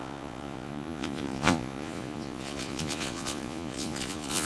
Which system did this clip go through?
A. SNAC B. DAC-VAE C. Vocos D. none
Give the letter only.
C